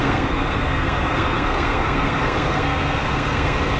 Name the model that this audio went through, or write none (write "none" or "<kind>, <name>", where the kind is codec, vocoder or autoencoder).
codec, SNAC